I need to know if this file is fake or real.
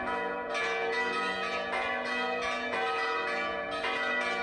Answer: real